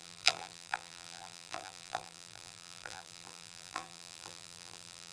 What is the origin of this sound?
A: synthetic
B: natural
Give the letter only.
A